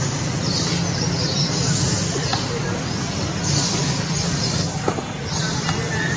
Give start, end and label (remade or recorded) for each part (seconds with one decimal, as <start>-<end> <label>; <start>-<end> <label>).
0.0-6.2 recorded